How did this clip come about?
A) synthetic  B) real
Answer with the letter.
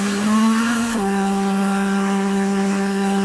A